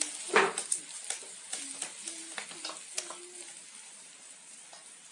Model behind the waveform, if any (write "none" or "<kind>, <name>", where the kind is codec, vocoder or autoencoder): none